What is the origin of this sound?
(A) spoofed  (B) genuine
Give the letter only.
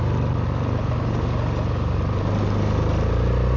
B